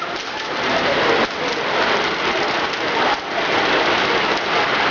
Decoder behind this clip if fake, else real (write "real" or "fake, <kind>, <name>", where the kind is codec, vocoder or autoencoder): real